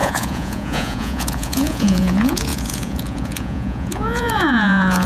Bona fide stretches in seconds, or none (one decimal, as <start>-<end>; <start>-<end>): none